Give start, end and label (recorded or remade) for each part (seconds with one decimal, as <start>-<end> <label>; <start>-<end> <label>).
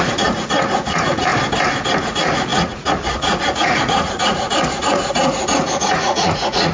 0.0-1.3 remade; 1.3-2.1 recorded; 2.1-6.7 remade